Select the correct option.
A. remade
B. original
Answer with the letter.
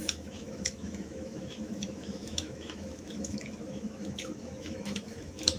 A